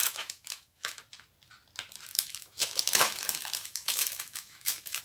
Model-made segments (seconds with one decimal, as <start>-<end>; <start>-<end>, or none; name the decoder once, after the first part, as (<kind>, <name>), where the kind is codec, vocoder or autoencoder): 0.0-1.0 (autoencoder, DAC-VAE); 2.1-5.0

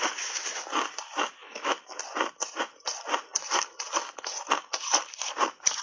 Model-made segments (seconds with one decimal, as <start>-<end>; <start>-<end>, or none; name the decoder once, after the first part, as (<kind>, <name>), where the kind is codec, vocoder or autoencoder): 1.4-2.0 (autoencoder, DAC-VAE)